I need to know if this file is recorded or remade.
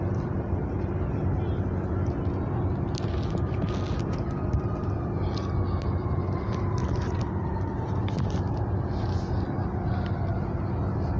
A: recorded